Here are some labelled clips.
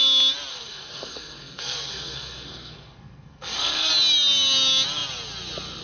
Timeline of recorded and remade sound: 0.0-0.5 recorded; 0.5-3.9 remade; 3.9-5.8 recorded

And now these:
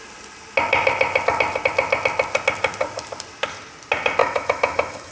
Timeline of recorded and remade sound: 0.0-4.2 recorded; 4.2-5.1 remade

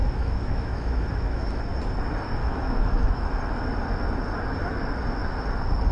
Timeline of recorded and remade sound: 0.0-1.6 remade; 1.6-2.4 recorded; 2.4-3.3 remade; 3.3-5.9 recorded

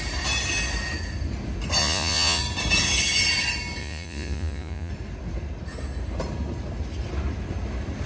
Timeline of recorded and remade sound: 0.0-1.8 recorded; 1.8-2.4 remade; 2.4-3.8 recorded; 3.8-4.9 remade; 4.9-8.1 recorded

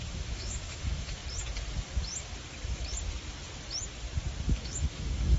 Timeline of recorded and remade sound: 0.0-1.2 remade; 1.2-4.4 recorded; 4.4-5.4 remade